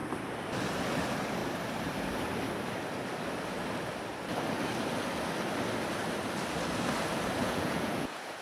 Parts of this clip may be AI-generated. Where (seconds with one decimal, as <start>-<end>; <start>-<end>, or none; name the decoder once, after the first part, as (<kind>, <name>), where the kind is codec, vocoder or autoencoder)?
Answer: 7.4-8.4 (vocoder, Vocos)